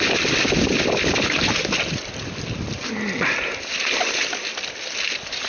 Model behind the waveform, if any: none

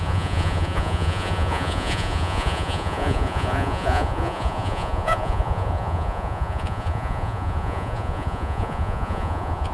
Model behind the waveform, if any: vocoder, Vocos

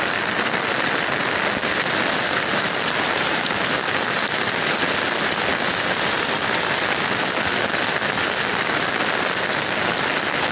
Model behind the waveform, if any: none